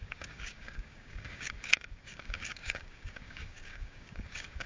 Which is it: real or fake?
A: fake